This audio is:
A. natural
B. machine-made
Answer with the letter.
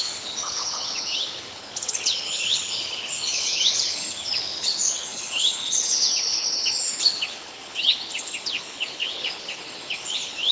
B